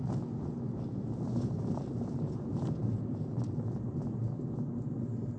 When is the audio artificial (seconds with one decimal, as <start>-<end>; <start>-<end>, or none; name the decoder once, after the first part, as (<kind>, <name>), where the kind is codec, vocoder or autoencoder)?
1.3-4.5 (vocoder, BigVGAN v2)